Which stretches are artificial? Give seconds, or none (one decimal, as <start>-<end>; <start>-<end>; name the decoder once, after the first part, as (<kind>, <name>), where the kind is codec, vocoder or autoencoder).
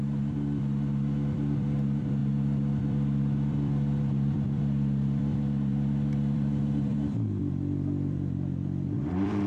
0.0-9.5 (vocoder, BigVGAN v2)